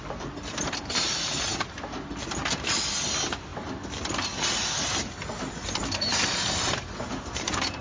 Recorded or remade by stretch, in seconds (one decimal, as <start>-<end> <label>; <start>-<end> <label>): 0.0-7.8 recorded